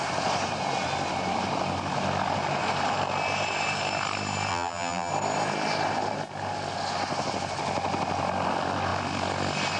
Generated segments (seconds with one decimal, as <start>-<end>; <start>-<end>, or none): 4.5-5.1